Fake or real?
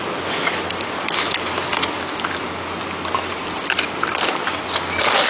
real